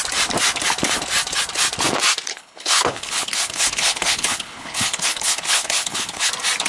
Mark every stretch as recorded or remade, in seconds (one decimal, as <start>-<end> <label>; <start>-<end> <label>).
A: 0.0-2.3 recorded; 2.3-6.3 remade; 6.3-6.7 recorded